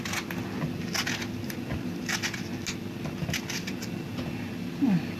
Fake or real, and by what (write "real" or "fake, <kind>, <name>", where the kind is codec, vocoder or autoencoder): real